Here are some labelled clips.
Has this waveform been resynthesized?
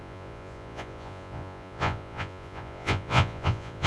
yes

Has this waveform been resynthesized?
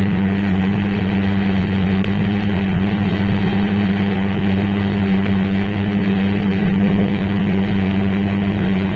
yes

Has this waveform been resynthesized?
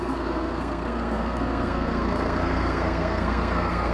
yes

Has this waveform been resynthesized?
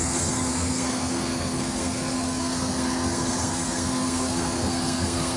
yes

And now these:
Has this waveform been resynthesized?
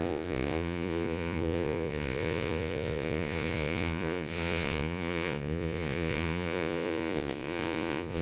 yes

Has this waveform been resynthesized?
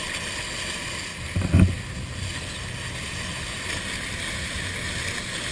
no